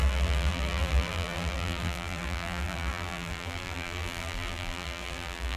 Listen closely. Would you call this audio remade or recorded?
remade